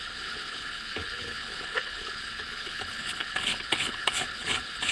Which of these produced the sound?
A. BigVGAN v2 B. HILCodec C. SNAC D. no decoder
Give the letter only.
B